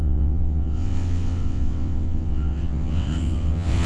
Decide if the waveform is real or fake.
fake